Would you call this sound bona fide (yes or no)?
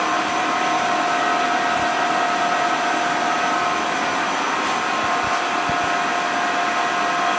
yes